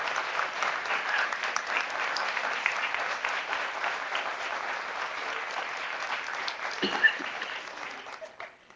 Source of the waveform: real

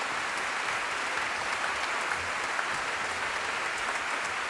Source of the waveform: real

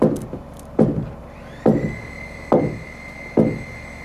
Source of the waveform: real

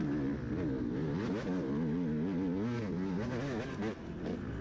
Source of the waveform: real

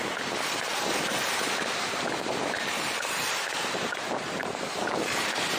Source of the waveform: fake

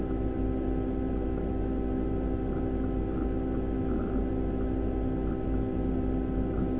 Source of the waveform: real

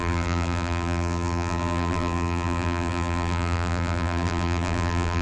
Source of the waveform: fake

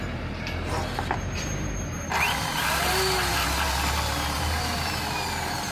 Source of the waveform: fake